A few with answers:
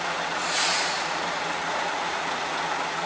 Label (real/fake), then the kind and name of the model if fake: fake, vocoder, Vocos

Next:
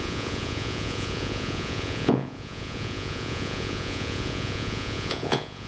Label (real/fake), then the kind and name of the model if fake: fake, vocoder, Vocos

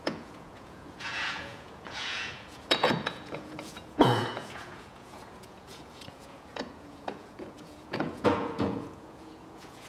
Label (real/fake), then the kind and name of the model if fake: fake, vocoder, Vocos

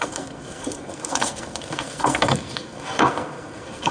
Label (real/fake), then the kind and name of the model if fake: fake, codec, SNAC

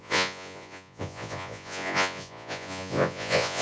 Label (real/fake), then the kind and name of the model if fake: fake, vocoder, Vocos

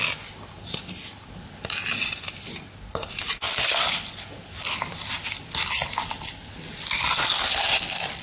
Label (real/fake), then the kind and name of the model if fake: real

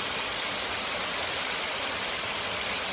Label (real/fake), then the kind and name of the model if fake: real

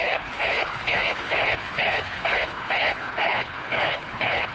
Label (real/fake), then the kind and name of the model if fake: fake, codec, HILCodec